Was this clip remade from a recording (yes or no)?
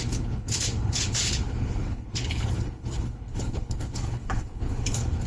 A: yes